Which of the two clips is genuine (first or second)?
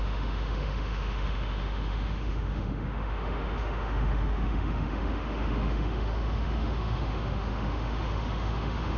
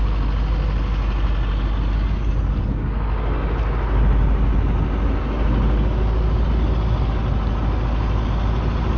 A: second